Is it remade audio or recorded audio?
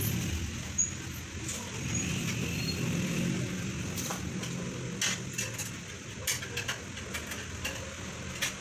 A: recorded